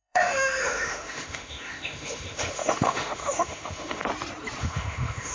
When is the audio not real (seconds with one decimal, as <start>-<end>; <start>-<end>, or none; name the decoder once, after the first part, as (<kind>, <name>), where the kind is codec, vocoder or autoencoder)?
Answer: 0.0-4.0 (autoencoder, DAC-VAE); 4.6-5.3

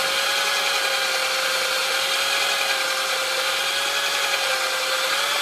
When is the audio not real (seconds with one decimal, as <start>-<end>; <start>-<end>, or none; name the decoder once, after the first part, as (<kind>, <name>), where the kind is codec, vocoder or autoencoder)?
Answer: none

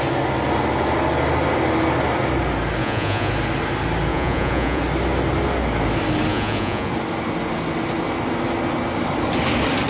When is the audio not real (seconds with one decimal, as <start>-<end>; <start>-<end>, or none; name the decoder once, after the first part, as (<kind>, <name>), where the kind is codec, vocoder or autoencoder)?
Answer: 2.8-3.3 (vocoder, Vocos); 4.1-4.8; 6.3-6.9